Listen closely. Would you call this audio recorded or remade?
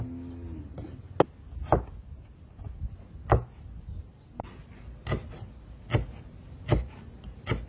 recorded